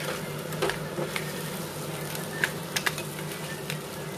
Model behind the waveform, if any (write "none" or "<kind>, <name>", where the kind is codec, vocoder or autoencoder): none